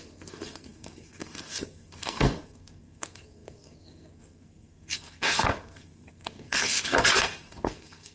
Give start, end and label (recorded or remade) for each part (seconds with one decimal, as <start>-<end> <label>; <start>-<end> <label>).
0.0-8.1 remade